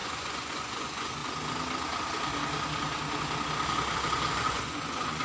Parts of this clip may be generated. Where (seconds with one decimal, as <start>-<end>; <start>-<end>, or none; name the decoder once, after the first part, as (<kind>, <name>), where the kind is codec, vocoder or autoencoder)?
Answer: 0.0-1.2 (vocoder, Vocos); 4.3-5.2